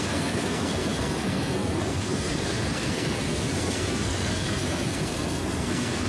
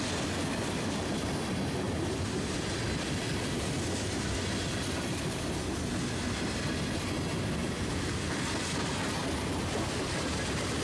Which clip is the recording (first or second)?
second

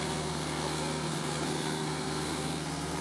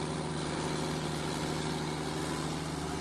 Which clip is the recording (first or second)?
second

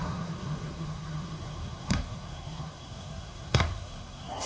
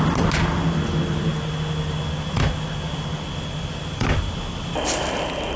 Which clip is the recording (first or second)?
second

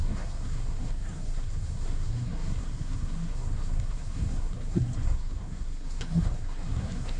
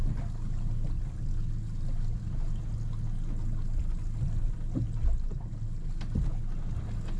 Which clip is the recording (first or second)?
second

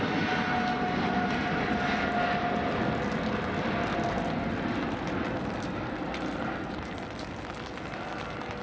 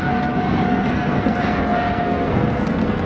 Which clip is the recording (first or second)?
first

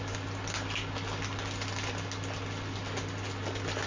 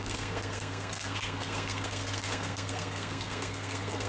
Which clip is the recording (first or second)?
first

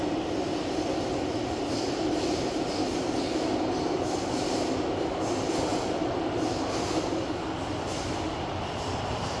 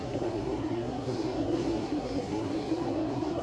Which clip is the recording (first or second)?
first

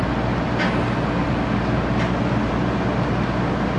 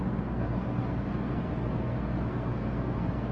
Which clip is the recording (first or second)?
first